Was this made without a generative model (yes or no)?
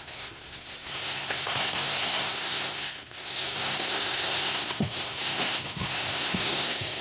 no